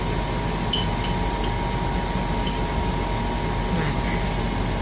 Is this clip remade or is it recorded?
recorded